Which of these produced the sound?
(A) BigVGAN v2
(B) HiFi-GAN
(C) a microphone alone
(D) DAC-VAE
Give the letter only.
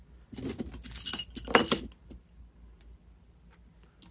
C